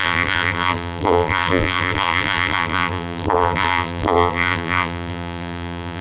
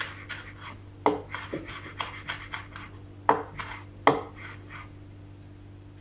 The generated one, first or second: first